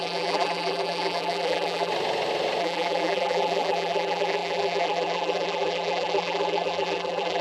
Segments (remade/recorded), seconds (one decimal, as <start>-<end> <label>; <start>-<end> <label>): 0.0-1.9 remade; 1.9-2.6 recorded; 2.6-7.4 remade